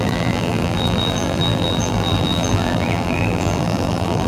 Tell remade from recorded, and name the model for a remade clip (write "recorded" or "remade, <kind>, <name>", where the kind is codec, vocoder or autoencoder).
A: remade, vocoder, BigVGAN v2